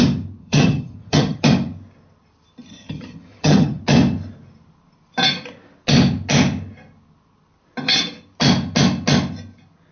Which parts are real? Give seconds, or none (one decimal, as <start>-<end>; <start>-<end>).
0.0-0.4; 1.4-2.7; 3.8-9.9